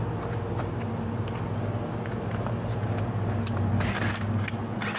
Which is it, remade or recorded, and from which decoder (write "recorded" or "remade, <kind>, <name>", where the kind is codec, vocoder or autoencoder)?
recorded